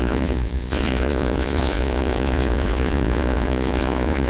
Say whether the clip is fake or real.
fake